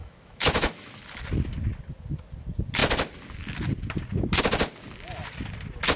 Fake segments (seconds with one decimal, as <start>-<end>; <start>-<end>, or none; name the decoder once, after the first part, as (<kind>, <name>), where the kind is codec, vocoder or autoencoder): 0.0-1.0 (autoencoder, DAC-VAE)